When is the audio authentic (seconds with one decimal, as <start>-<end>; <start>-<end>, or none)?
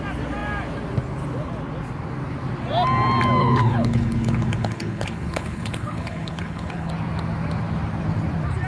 0.0-3.4; 6.9-8.7